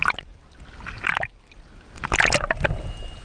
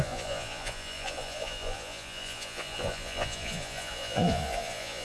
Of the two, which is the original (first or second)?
first